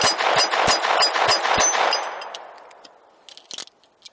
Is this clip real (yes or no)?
yes